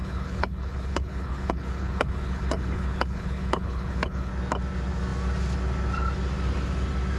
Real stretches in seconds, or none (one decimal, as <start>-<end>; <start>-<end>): 4.3-7.2